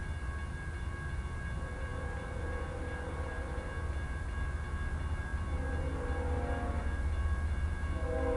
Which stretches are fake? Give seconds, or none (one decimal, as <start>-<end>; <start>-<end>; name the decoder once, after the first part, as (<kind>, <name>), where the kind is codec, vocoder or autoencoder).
none